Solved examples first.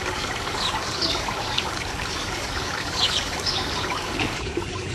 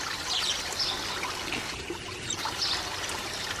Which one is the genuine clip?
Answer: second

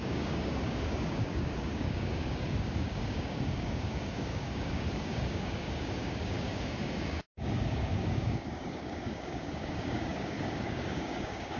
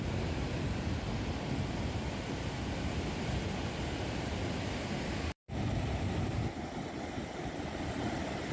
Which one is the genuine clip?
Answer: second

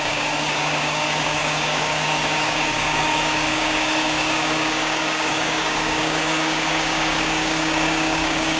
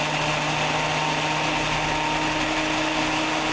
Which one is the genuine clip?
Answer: second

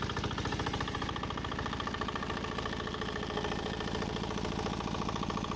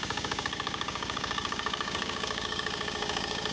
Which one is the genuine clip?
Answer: first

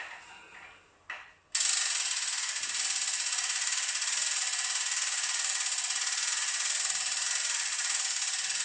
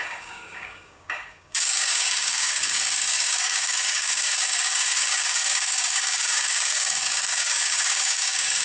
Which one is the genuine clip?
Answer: first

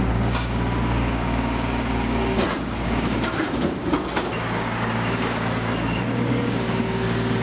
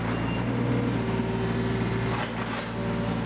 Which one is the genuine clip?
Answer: second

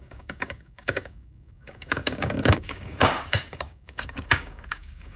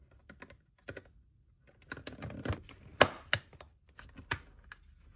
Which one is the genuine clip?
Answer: second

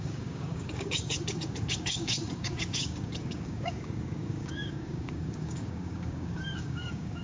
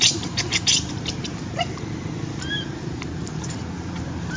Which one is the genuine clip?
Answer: second